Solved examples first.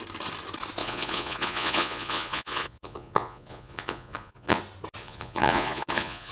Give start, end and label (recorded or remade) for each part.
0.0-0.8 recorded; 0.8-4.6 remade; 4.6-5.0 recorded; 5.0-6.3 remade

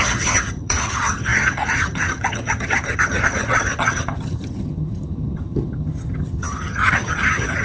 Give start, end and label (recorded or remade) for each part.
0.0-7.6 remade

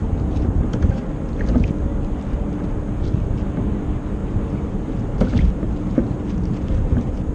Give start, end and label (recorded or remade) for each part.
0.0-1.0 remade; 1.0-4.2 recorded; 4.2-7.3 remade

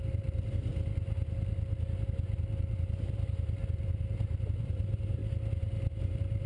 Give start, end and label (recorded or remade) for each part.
0.0-0.7 remade; 0.7-2.7 recorded; 2.7-3.6 remade; 3.6-4.4 recorded; 4.4-5.2 remade; 5.2-6.0 recorded; 6.0-6.5 remade

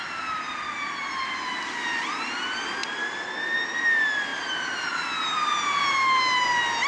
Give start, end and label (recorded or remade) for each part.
0.0-6.9 recorded